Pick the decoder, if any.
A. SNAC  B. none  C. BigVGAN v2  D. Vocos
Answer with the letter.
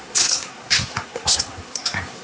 A